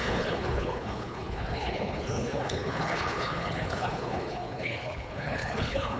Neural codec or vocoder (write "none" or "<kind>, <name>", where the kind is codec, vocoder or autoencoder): codec, HILCodec